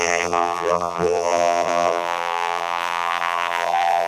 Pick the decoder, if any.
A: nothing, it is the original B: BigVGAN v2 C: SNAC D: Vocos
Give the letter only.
B